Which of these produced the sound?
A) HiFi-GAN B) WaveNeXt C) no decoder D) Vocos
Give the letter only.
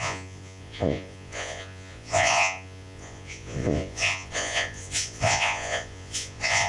D